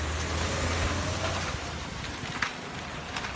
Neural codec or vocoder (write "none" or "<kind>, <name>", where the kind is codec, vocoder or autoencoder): none